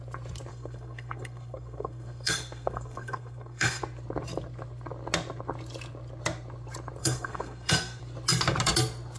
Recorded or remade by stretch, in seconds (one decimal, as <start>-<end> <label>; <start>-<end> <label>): 0.0-0.5 recorded; 0.5-3.8 remade; 3.8-7.0 recorded; 7.0-8.0 remade; 8.0-9.2 recorded